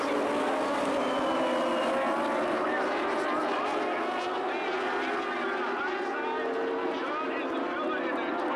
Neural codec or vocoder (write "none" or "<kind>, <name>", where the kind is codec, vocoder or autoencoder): none